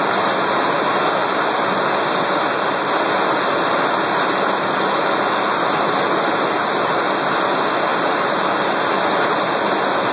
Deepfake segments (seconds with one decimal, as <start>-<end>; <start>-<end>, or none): none